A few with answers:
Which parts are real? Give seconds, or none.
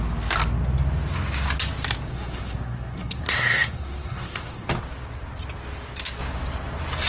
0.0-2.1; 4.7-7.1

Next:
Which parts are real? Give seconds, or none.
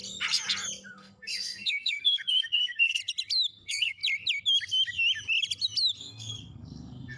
0.0-0.9; 3.0-3.5; 4.0-6.0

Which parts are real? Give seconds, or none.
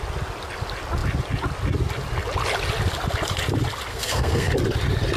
0.0-3.9; 4.5-5.2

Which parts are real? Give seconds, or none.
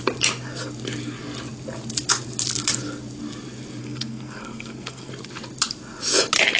0.0-3.8; 5.1-6.6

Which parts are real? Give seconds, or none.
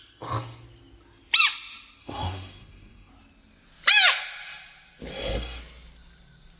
0.0-2.0; 3.1-5.1; 5.6-6.6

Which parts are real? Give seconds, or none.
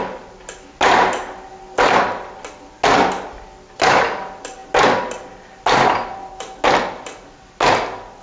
0.0-8.2